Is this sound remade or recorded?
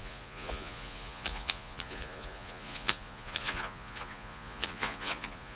remade